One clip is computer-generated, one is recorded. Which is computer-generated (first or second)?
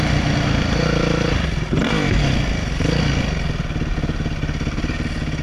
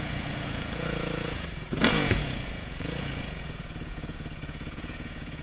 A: second